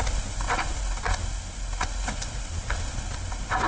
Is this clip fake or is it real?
real